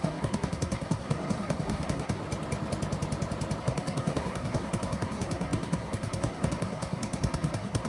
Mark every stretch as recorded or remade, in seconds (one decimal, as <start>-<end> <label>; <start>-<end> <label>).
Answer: 0.0-2.2 remade; 2.2-3.6 recorded; 3.6-7.9 remade